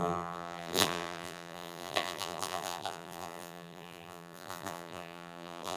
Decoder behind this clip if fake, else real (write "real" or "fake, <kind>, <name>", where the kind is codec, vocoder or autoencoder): fake, vocoder, BigVGAN v2